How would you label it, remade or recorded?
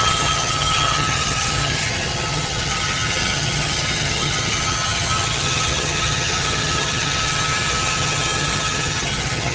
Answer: remade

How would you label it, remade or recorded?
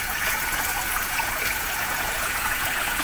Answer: remade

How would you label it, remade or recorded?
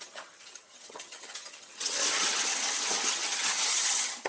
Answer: remade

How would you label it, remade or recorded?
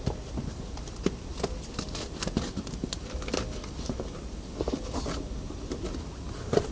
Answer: recorded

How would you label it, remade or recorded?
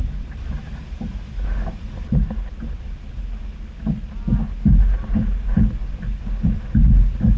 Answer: recorded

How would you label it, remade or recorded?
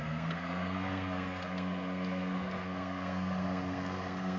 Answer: remade